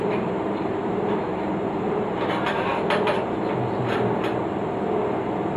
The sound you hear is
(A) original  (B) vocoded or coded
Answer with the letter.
A